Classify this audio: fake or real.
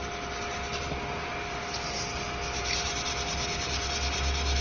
real